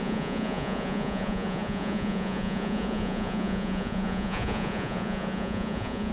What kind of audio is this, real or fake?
fake